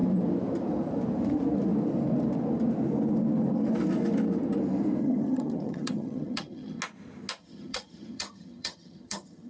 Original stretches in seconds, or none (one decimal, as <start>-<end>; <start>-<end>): 0.0-5.0; 6.8-7.4